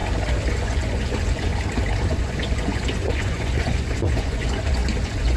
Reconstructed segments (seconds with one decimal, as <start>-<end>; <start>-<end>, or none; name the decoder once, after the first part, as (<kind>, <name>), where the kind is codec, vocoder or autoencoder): 0.5-1.5 (vocoder, Vocos); 2.1-5.4